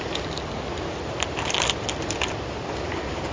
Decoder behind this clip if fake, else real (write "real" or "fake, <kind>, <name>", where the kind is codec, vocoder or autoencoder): real